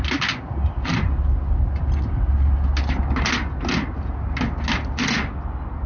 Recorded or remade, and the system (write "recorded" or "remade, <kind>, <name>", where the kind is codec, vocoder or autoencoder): recorded